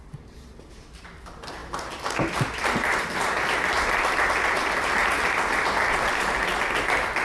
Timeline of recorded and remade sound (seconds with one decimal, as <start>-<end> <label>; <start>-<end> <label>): 0.0-7.2 recorded